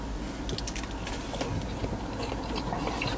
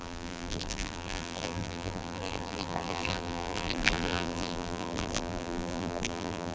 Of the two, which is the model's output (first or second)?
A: second